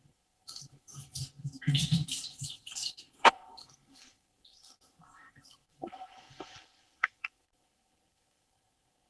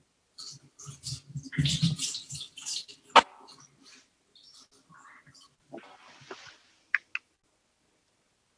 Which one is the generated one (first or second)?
first